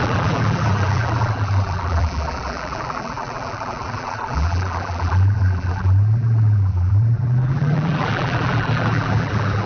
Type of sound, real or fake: fake